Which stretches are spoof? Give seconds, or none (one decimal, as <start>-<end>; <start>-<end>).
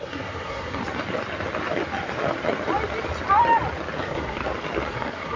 0.0-0.8; 4.0-4.4; 4.9-5.4